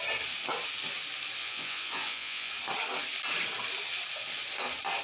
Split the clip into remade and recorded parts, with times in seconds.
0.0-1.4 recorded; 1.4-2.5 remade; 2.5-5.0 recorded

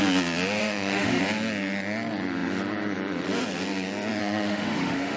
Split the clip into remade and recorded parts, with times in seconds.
0.0-0.6 recorded; 0.6-1.2 remade; 1.2-4.2 recorded; 4.2-5.2 remade

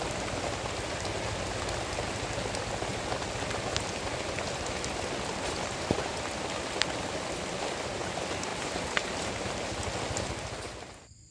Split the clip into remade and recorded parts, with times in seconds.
0.0-11.3 recorded

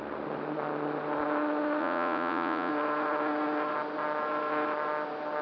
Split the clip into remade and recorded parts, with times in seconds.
0.0-1.8 recorded; 1.8-2.7 remade; 2.7-5.4 recorded

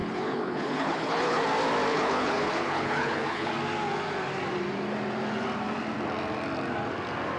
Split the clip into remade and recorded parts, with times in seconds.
0.0-1.4 remade; 1.4-1.9 recorded; 1.9-3.5 remade; 3.5-7.4 recorded

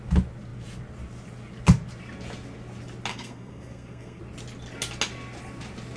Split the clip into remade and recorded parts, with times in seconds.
0.0-3.1 recorded; 3.1-4.2 remade; 4.2-6.0 recorded

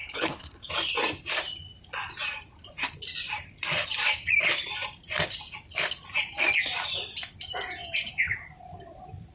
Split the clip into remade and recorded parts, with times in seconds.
0.0-0.7 remade; 0.7-9.3 recorded